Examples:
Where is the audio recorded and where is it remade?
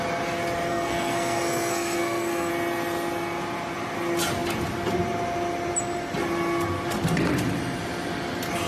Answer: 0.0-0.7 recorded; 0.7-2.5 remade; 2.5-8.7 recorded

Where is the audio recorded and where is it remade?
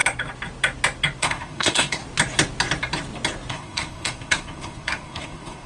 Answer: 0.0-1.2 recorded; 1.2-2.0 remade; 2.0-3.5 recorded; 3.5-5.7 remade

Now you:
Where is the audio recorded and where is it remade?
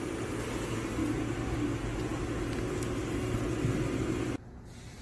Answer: 0.0-5.0 recorded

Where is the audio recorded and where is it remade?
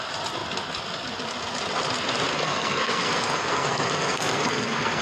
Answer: 0.0-2.3 recorded; 2.3-5.0 remade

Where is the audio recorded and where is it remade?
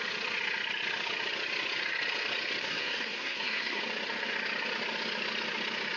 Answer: 0.0-2.6 recorded; 2.6-3.8 remade; 3.8-6.0 recorded